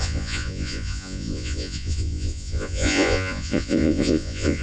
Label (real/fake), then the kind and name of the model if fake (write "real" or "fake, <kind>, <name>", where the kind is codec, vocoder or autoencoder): fake, vocoder, Vocos